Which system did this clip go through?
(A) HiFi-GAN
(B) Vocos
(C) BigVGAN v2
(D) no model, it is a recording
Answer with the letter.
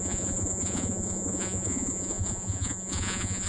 B